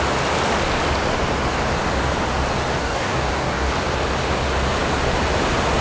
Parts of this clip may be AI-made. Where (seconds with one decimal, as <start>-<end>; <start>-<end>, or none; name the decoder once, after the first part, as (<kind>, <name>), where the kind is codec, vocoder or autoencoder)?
2.8-3.7 (codec, DAC)

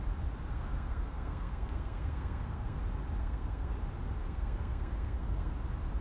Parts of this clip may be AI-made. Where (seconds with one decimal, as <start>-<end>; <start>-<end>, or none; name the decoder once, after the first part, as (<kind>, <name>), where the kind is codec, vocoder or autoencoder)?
0.5-2.8 (codec, SNAC); 3.2-3.7; 4.2-5.5

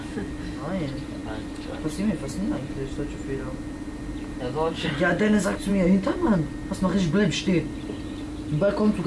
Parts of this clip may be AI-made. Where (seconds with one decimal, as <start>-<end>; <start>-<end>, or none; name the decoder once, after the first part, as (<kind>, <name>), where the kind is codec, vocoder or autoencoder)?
none

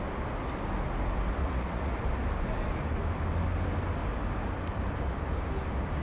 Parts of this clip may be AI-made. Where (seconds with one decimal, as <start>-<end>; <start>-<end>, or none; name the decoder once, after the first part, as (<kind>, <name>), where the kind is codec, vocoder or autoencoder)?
1.4-2.0 (vocoder, Vocos)

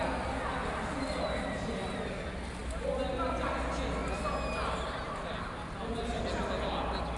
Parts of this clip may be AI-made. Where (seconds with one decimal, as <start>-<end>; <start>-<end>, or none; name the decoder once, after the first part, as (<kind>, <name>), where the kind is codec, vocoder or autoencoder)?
none

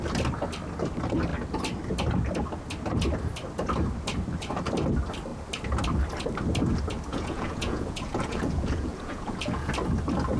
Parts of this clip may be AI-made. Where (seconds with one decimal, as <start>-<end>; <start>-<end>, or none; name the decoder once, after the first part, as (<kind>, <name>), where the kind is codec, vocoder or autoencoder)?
7.1-9.7 (vocoder, Vocos)

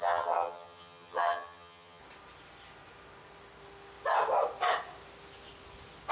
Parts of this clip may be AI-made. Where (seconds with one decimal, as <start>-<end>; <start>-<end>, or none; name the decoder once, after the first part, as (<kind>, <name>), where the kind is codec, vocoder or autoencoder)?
0.0-2.0 (vocoder, HiFi-GAN)

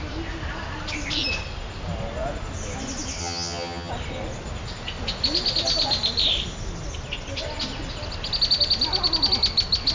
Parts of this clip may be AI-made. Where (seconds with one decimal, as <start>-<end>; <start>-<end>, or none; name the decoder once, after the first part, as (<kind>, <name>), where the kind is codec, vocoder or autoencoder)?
3.2-3.9 (vocoder, HiFi-GAN)